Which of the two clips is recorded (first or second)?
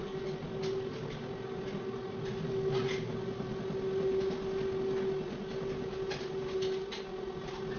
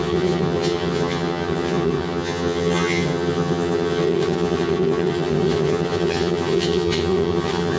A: first